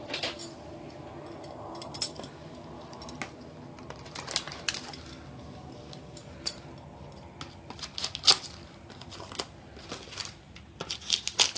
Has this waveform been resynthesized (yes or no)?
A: no